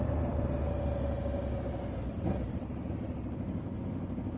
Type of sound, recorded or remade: recorded